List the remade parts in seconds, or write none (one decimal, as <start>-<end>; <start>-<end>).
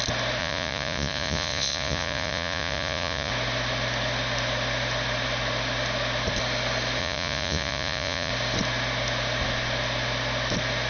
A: 0.4-3.3; 7.0-8.3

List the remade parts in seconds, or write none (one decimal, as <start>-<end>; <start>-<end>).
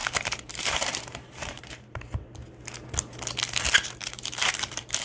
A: 0.0-2.4; 4.1-5.0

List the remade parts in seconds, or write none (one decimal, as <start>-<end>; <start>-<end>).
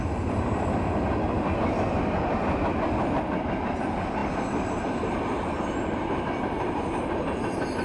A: 4.2-4.8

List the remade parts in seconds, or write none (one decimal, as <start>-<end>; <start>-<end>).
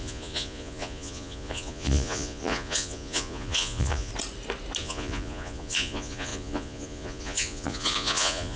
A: 0.0-4.1; 4.8-8.6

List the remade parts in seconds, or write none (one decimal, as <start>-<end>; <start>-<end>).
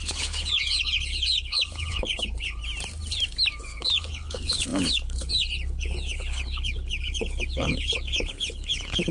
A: 0.0-2.6; 3.6-9.1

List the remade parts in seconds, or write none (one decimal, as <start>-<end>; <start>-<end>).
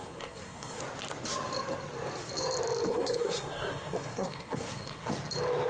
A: 0.0-0.8; 2.9-5.1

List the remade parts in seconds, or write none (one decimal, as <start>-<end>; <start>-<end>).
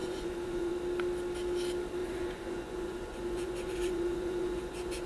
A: 0.0-0.7; 2.0-5.1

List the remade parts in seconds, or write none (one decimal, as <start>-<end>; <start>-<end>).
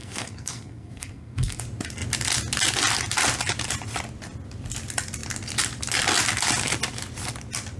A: 0.0-1.6